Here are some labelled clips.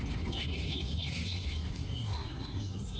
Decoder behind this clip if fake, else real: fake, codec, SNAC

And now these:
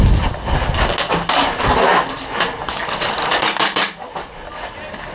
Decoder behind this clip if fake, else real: real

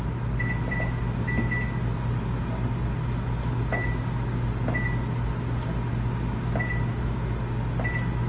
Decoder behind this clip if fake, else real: real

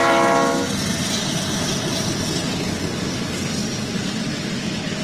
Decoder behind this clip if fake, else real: real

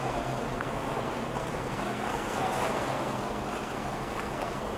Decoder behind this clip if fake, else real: fake, codec, SNAC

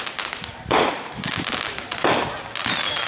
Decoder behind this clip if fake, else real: real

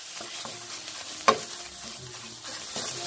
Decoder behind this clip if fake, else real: real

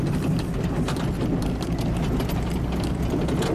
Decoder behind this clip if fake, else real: real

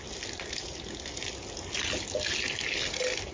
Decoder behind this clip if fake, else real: real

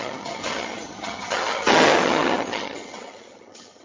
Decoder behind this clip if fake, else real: fake, vocoder, HiFi-GAN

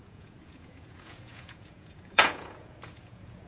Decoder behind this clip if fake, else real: fake, vocoder, Vocos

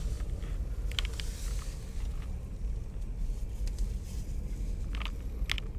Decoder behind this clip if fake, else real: real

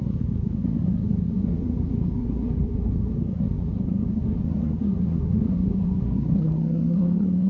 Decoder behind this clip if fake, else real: fake, codec, SNAC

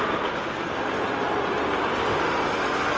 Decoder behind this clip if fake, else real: real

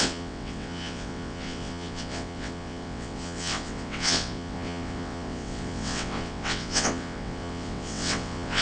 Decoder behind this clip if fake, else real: fake, vocoder, WaveNeXt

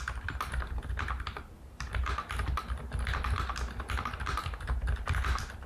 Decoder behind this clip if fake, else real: real